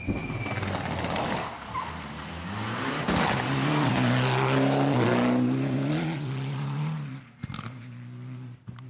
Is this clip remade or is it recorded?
recorded